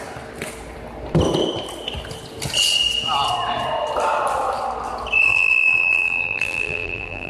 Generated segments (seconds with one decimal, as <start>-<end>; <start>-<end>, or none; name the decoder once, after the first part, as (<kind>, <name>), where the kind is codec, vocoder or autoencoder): 5.3-7.3 (vocoder, BigVGAN v2)